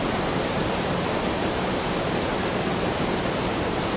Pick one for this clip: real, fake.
fake